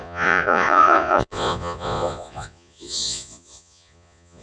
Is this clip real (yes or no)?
no